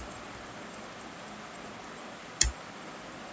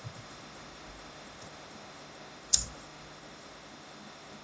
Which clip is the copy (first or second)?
second